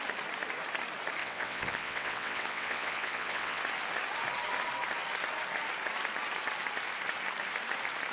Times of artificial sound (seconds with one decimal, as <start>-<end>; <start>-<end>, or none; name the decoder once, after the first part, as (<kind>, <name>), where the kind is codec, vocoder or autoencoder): 1.2-3.6 (vocoder, WaveNeXt)

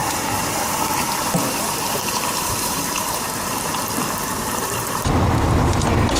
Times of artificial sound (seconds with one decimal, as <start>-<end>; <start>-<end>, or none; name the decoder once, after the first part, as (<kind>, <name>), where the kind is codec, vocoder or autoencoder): 0.0-3.7 (vocoder, BigVGAN v2); 4.3-5.1